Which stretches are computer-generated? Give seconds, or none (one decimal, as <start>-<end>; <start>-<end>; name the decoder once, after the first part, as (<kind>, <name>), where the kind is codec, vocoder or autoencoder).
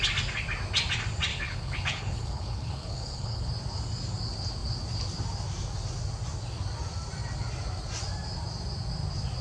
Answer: 1.3-3.5 (codec, HILCodec)